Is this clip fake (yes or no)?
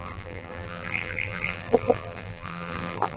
yes